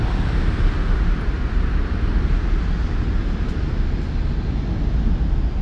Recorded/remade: recorded